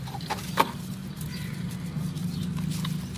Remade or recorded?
recorded